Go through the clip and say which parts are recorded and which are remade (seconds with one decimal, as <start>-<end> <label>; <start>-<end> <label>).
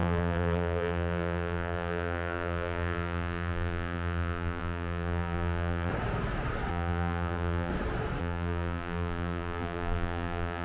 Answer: 0.0-5.9 remade; 5.9-6.7 recorded; 6.7-7.7 remade; 7.7-8.2 recorded; 8.2-10.6 remade